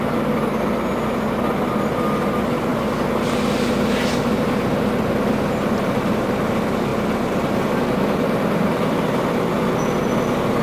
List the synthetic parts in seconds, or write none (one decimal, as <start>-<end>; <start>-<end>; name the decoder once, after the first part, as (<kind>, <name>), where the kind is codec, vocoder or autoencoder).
none